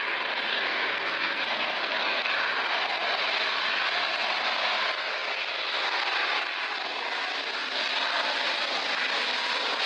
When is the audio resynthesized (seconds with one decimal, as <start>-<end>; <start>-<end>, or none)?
0.5-2.3

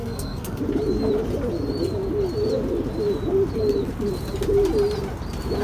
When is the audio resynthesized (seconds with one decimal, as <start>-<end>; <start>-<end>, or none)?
0.0-0.6